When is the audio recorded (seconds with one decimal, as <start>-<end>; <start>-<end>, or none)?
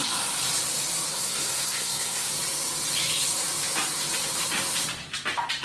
0.0-1.1; 2.3-5.6